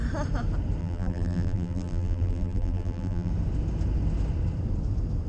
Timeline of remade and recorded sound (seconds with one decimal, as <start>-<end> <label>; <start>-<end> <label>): 0.0-0.8 recorded; 0.8-3.3 remade; 3.3-5.3 recorded